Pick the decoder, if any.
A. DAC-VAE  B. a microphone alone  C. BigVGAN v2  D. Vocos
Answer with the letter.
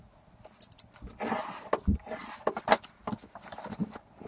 B